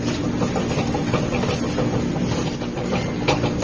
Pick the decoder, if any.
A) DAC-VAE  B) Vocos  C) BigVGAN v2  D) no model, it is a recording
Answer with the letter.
D